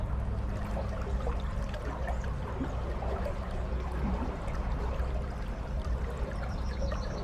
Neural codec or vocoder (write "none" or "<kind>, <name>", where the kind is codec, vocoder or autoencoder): none